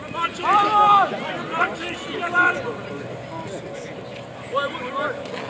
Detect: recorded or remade recorded